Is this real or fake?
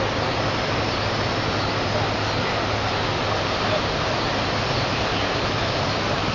real